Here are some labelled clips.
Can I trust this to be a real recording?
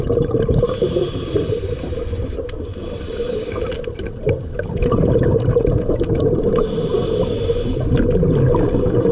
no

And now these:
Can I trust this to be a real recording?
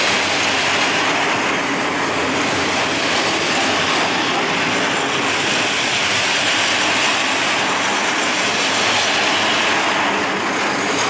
yes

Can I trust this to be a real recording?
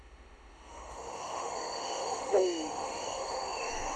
no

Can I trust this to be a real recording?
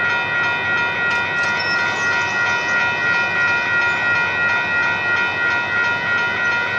yes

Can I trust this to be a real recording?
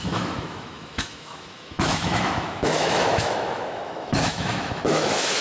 no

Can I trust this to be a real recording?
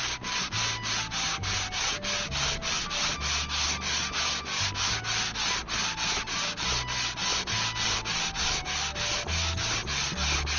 yes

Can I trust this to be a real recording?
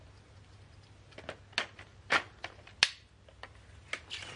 yes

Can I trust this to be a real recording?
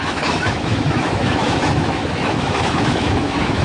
no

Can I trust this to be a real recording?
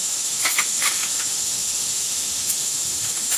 no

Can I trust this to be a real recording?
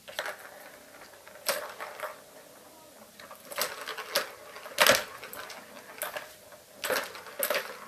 yes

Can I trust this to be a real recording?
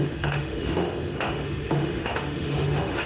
no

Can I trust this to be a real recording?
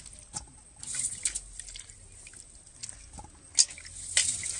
yes